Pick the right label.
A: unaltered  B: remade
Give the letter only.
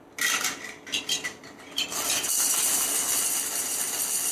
A